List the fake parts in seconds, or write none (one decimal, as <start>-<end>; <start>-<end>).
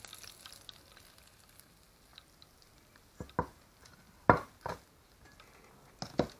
none